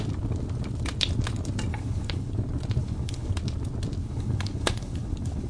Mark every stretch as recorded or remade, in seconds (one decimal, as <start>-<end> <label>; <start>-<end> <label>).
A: 0.0-1.7 recorded; 1.7-2.3 remade; 2.3-2.8 recorded; 2.8-3.3 remade; 3.3-4.0 recorded; 4.0-5.5 remade